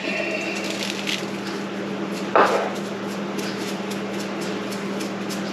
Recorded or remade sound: recorded